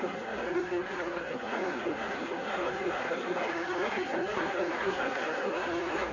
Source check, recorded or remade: remade